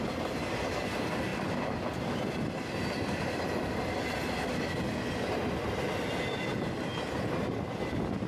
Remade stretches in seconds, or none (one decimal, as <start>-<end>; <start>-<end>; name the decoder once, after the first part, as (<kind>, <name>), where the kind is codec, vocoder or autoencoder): none